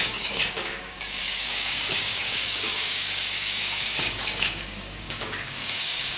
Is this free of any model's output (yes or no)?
no